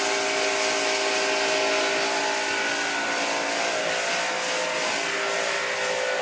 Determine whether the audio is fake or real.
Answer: real